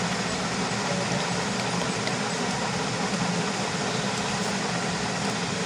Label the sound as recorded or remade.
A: recorded